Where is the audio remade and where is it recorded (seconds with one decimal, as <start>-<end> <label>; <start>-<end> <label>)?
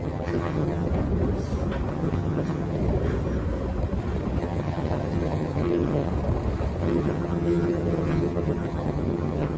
0.0-0.9 remade; 0.9-1.9 recorded; 1.9-2.8 remade; 2.8-4.4 recorded; 4.4-6.1 remade; 6.1-6.8 recorded; 6.8-9.6 remade